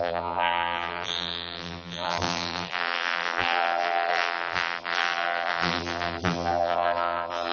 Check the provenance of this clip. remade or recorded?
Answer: remade